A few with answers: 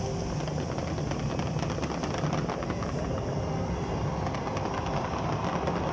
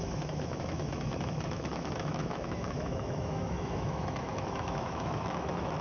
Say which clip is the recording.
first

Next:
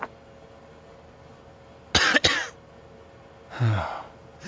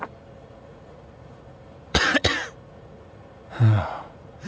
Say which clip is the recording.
first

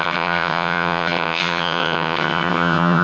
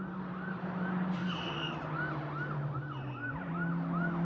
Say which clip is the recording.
second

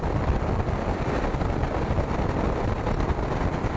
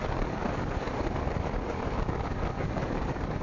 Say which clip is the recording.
first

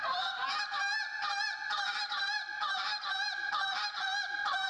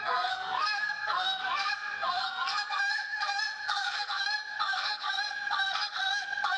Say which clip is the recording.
first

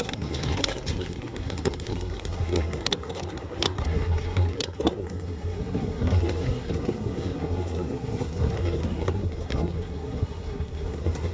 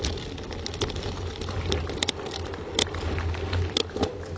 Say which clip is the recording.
second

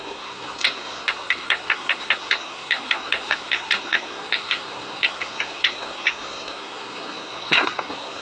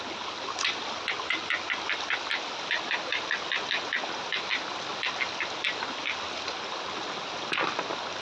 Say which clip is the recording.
second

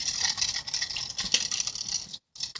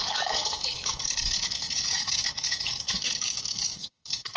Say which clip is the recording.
first